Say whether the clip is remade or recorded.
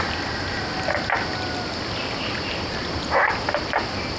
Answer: recorded